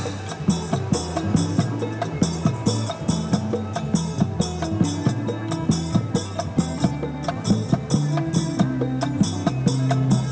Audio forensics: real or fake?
real